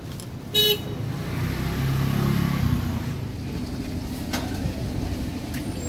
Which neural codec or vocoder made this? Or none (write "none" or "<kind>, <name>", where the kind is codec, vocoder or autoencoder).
none